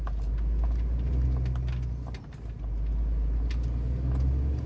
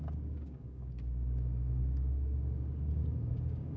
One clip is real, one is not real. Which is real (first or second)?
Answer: first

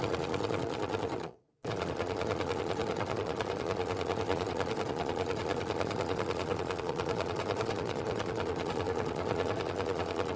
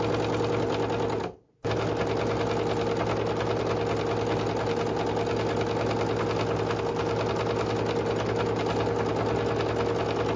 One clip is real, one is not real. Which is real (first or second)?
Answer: second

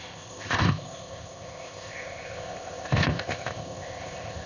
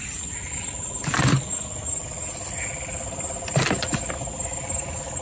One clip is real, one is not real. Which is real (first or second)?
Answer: second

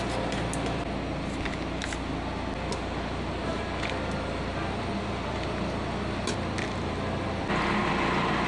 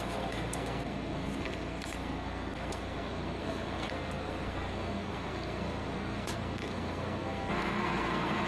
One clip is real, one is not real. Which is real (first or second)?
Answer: first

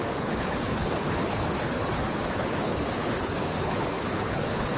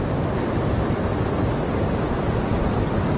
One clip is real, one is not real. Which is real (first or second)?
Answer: second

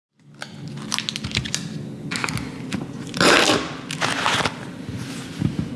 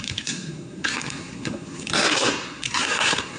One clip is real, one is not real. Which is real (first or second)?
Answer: first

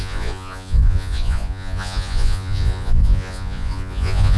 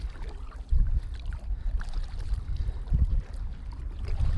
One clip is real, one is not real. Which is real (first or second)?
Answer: second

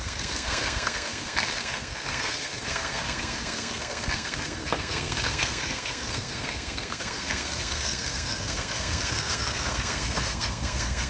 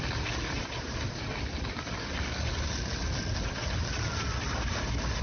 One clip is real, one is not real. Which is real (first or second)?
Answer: second